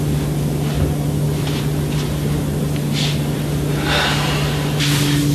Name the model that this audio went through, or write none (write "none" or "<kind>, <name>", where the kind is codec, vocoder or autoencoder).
none